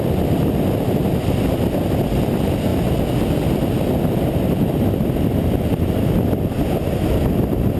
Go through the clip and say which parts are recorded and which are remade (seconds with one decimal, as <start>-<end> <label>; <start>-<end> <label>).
0.0-7.8 recorded